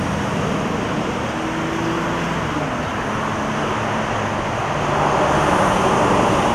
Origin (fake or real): real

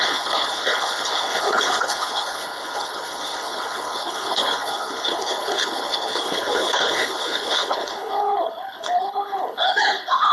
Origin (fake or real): fake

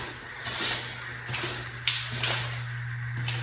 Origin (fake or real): real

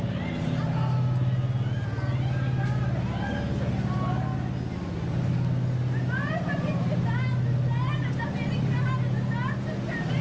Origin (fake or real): real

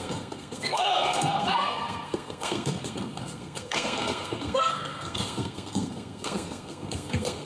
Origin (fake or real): fake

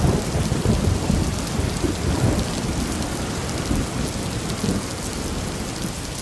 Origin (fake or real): real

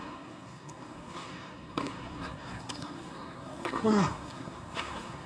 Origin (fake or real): fake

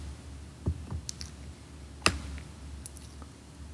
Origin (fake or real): real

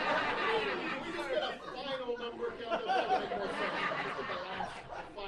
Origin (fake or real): real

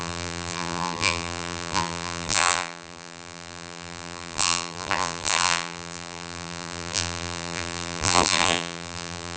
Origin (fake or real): fake